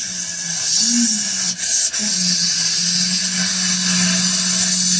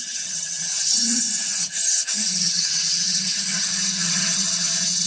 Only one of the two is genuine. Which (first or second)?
first